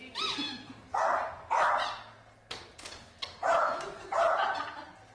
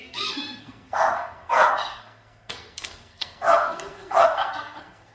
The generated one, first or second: second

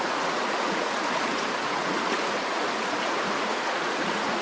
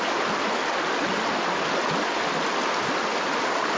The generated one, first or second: first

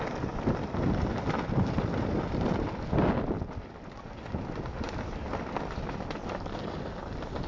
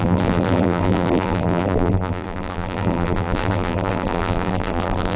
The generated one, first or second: second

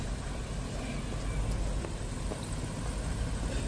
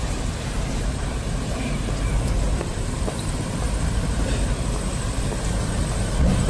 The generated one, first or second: second